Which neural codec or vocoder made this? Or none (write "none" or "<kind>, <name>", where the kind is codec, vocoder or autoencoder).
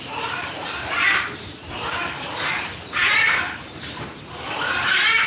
vocoder, BigVGAN v2